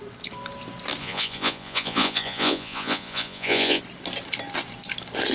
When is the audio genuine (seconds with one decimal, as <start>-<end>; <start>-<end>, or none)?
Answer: 0.0-1.0; 3.8-5.3